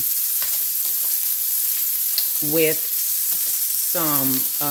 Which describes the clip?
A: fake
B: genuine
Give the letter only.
A